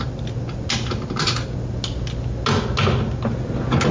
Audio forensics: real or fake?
real